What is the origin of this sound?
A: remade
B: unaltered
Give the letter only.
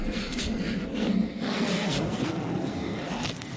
A